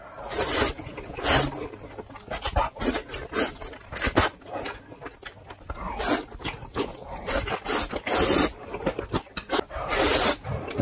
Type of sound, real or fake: real